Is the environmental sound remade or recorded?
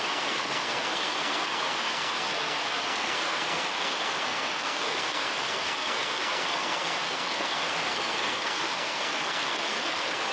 remade